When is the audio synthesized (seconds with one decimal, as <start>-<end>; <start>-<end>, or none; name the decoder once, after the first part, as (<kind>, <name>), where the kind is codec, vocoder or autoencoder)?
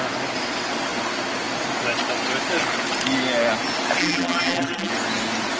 4.0-4.9 (vocoder, BigVGAN v2)